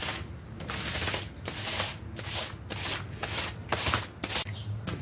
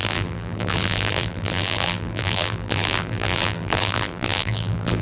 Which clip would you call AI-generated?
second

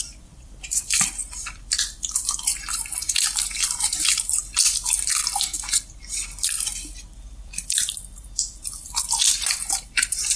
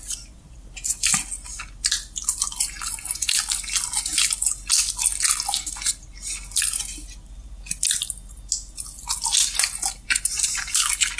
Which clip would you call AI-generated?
first